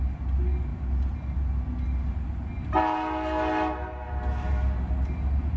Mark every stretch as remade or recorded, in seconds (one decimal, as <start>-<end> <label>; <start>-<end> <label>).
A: 0.0-5.6 recorded